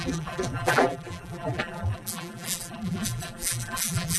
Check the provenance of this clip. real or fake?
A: fake